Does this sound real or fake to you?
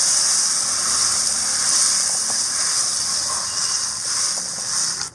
real